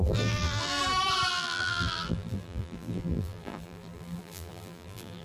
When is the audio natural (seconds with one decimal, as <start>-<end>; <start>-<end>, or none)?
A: 0.8-1.3